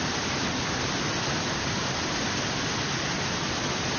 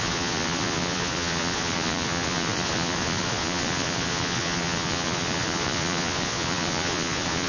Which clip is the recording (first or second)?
first